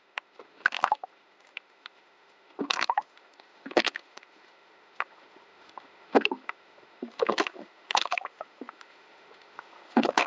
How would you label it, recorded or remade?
remade